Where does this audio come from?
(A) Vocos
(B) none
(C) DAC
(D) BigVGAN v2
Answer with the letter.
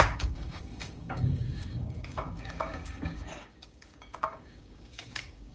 C